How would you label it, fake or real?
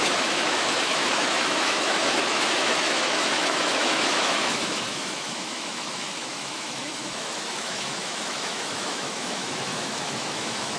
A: fake